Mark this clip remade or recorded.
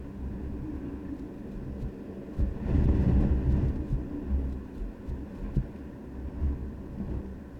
recorded